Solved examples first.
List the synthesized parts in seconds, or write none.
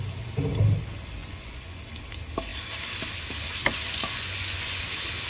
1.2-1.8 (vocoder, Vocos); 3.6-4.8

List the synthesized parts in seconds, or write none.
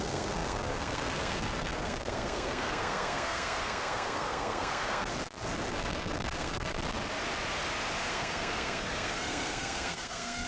0.0-5.1 (codec, SNAC); 5.7-6.7; 8.1-10.5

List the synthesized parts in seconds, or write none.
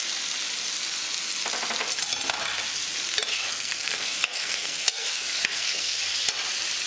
3.3-6.0 (codec, SNAC)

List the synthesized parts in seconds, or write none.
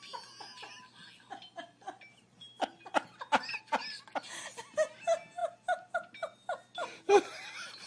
none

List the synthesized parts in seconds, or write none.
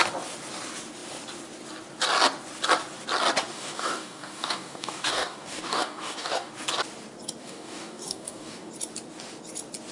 3.5-6.5 (codec, DAC); 7.4-8.7